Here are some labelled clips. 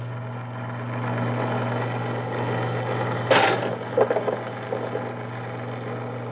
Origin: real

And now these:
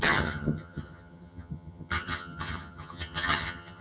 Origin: fake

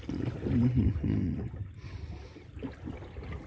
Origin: real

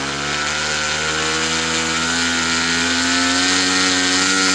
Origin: real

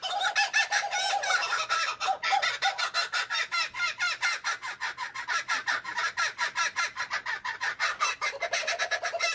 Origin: real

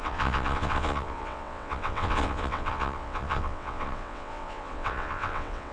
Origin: fake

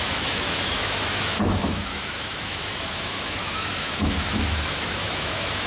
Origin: fake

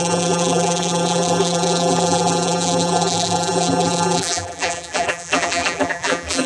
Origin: fake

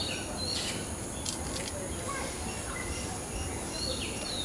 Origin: real